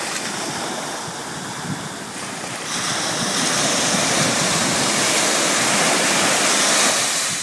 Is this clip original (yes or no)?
yes